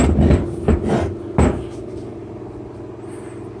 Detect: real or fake real